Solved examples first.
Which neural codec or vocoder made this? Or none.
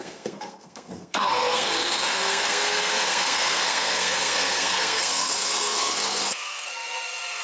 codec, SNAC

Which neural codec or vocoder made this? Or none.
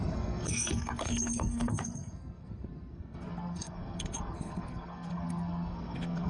codec, SNAC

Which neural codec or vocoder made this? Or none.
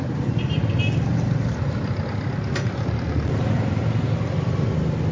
none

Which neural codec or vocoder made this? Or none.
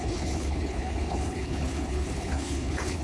codec, HILCodec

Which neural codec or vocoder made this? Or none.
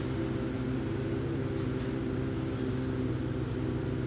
none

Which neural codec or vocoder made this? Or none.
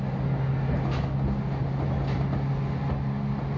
none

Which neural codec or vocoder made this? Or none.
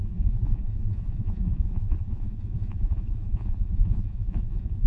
vocoder, Vocos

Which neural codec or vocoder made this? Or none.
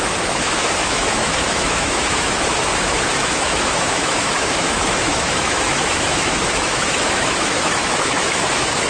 autoencoder, DAC-VAE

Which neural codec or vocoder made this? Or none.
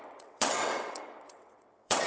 vocoder, WaveNeXt